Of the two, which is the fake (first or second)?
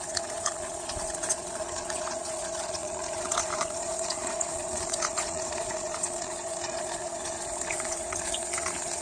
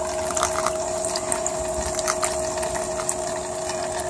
first